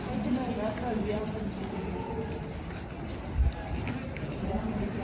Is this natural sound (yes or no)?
yes